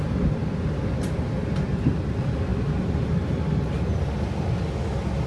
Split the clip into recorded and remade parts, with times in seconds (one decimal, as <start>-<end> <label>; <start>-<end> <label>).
0.0-5.3 recorded